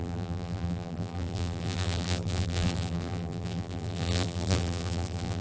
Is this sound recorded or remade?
remade